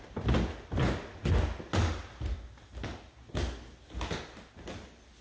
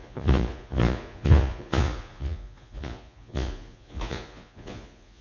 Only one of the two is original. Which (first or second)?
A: first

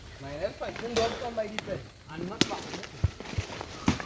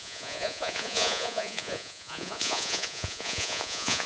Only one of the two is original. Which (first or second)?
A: first